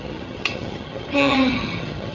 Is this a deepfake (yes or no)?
yes